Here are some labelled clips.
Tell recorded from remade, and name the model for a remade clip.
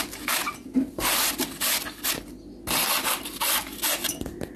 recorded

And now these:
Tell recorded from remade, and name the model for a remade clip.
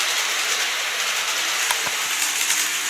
recorded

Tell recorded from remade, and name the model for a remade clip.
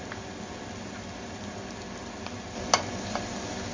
recorded